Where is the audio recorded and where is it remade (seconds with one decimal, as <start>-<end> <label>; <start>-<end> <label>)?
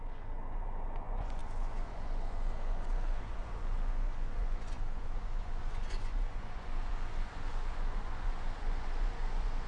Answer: 0.0-9.7 remade